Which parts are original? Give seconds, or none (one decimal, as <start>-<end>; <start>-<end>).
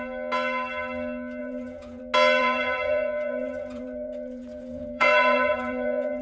0.0-1.4; 2.0-2.4